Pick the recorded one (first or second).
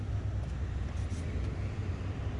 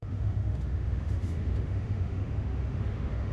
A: first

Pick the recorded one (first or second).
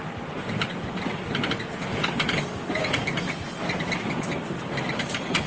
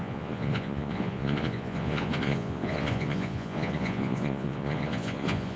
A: first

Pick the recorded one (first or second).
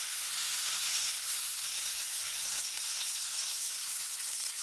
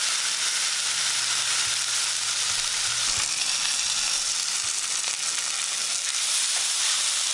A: second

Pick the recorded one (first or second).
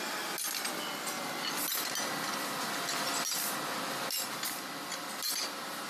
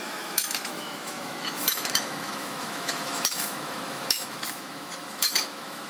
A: first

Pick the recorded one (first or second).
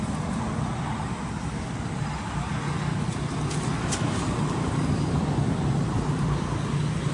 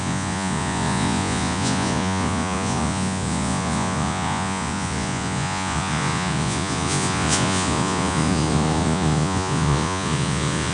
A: first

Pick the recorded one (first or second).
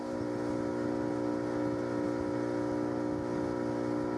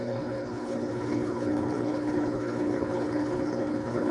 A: first